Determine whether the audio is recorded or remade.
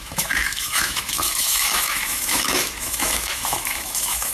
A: remade